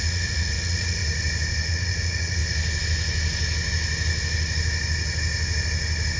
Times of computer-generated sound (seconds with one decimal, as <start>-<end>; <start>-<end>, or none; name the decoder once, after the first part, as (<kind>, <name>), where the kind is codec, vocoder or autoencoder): 0.0-1.0 (vocoder, Vocos); 1.7-2.4